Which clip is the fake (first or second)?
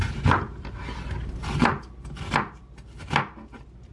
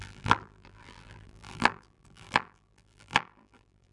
second